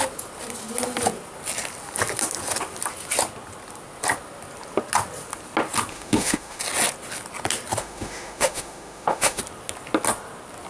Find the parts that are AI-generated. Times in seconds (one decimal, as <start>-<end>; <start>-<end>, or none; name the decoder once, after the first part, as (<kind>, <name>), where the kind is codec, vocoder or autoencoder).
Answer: 5.9-6.6 (autoencoder, DAC-VAE); 7.8-9.4